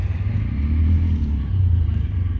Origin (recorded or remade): recorded